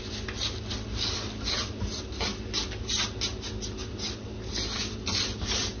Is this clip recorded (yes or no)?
yes